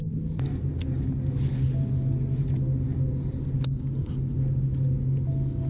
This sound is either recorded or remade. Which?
recorded